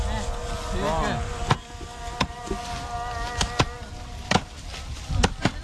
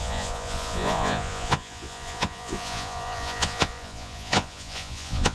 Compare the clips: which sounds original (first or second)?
first